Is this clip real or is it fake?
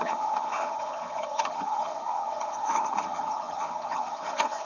fake